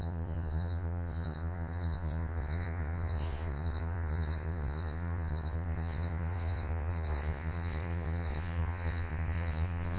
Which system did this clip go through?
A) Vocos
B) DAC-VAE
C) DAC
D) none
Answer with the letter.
A